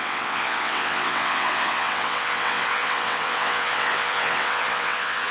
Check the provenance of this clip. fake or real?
fake